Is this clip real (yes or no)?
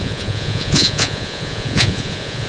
no